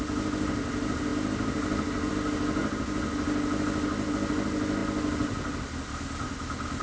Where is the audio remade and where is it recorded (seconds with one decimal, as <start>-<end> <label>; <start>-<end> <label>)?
0.0-6.8 recorded